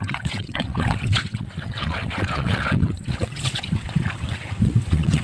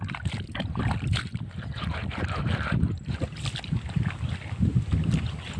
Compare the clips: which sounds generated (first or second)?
first